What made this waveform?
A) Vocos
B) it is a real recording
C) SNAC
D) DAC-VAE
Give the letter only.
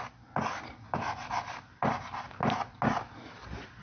B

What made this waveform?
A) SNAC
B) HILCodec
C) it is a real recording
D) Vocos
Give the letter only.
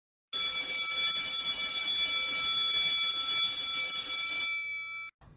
C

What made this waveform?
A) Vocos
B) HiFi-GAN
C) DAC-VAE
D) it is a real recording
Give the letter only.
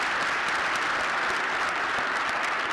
D